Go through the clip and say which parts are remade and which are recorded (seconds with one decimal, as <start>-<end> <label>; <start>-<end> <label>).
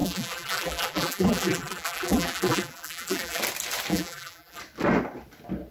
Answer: 0.0-3.4 remade; 3.4-3.9 recorded; 3.9-4.6 remade; 4.6-5.7 recorded